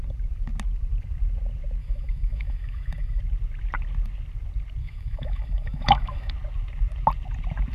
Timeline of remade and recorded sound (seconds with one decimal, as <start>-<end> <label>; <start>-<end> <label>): 0.0-1.8 recorded; 1.8-3.2 remade; 3.2-4.8 recorded; 4.8-6.3 remade; 6.3-7.7 recorded